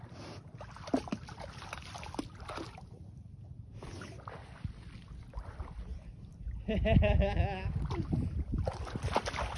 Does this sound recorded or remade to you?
recorded